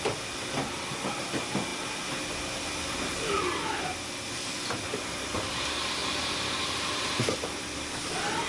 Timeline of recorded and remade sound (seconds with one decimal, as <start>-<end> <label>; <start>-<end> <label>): 0.0-8.5 recorded